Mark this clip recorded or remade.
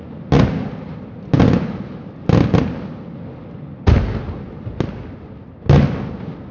recorded